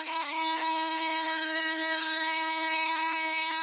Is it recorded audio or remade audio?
remade